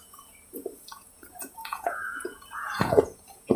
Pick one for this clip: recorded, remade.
remade